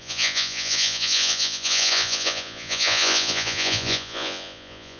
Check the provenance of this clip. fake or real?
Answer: fake